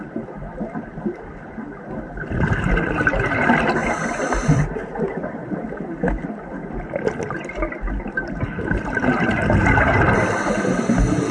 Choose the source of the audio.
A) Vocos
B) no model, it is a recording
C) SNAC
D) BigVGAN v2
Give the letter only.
B